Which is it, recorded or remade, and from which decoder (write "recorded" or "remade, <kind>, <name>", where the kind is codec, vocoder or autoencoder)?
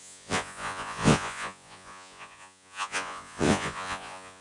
remade, vocoder, Vocos